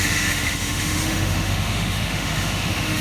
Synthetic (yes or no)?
yes